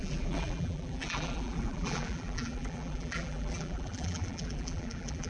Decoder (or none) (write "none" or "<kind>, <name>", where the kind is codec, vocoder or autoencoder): vocoder, BigVGAN v2